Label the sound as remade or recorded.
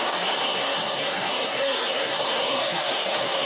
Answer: remade